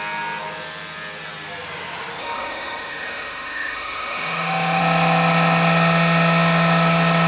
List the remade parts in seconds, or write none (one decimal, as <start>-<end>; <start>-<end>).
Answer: 2.2-4.8